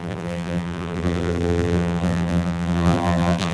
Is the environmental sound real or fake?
fake